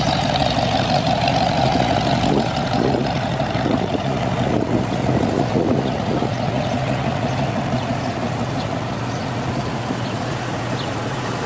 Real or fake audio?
fake